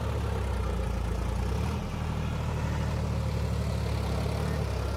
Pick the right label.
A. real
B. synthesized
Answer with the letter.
A